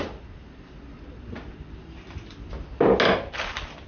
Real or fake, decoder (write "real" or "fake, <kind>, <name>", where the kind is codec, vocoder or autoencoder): real